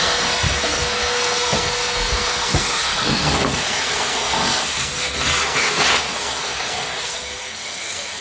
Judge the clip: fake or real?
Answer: fake